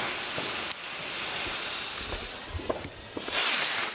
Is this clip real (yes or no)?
yes